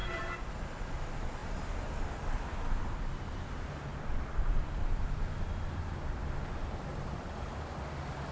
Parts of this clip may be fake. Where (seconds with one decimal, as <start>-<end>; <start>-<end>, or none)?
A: 0.0-0.5; 3.9-5.2; 6.9-7.8